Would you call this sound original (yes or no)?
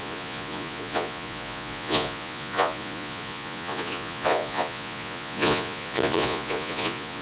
no